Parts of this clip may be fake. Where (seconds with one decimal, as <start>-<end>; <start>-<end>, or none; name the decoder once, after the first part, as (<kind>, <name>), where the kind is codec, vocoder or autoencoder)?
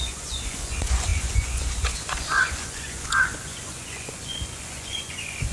0.0-5.5 (vocoder, Vocos)